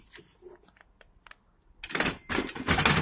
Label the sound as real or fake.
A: real